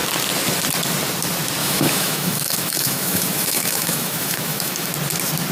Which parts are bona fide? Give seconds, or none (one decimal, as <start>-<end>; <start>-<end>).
0.0-1.6; 4.9-5.5

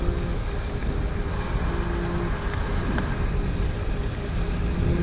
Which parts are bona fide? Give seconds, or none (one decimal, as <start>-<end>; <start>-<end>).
0.0-5.0

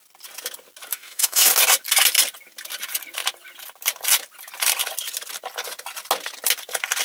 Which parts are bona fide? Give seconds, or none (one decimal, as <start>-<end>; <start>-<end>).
0.0-0.9; 1.5-7.0

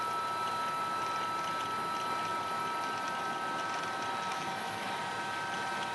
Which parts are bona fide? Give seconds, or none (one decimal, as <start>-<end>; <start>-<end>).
0.0-4.3; 5.0-5.9